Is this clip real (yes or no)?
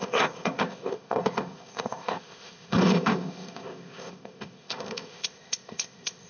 no